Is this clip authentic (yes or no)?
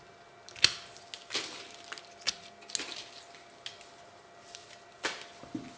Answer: yes